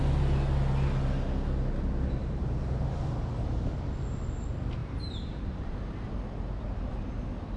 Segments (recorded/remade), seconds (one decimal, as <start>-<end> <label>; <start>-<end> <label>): 0.0-2.2 recorded; 2.2-2.9 remade; 2.9-4.8 recorded; 4.8-5.9 remade; 5.9-7.6 recorded